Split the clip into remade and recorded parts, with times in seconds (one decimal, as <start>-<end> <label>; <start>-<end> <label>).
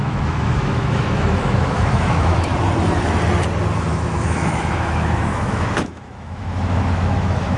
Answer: 0.0-2.5 remade; 2.5-3.9 recorded; 3.9-7.6 remade